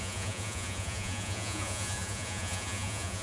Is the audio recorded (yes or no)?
no